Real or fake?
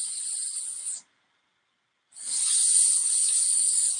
real